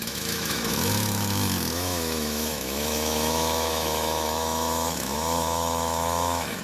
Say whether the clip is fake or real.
fake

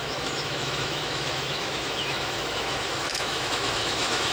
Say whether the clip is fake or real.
fake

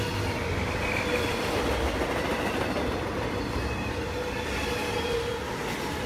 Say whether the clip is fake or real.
real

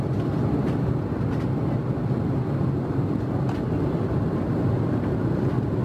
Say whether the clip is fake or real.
real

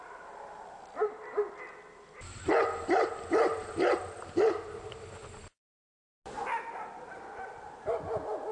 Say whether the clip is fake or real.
real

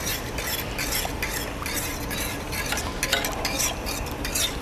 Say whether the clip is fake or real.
real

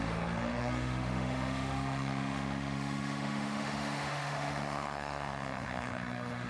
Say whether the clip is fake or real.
fake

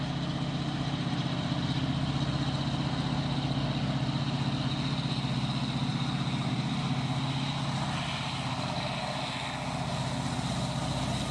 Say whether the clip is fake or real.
real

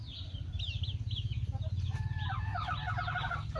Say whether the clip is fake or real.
real